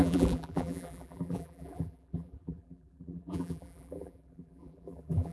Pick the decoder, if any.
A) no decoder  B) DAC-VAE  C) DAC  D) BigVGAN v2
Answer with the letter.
D